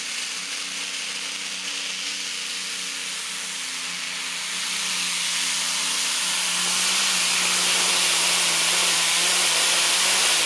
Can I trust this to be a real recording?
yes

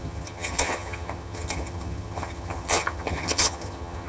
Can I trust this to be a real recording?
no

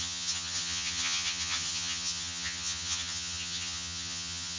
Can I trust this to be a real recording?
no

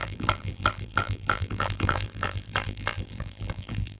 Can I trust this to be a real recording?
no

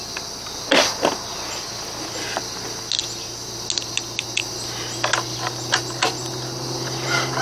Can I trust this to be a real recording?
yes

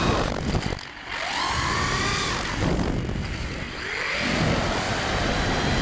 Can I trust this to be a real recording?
yes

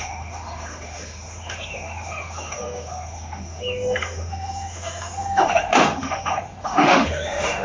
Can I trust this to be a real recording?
no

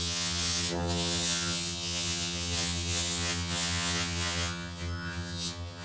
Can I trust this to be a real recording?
no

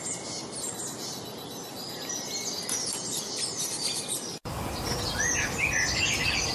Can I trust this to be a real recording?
yes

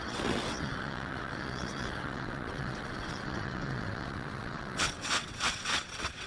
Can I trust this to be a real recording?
no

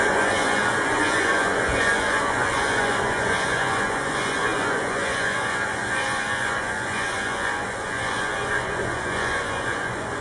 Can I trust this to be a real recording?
no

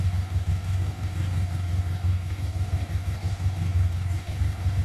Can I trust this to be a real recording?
no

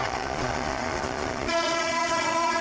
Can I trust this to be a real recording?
no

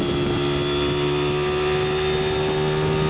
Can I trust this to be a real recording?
yes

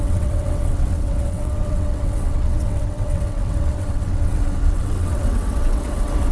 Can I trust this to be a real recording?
no